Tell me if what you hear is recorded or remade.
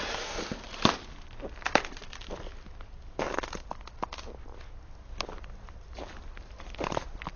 recorded